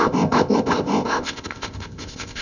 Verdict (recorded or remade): remade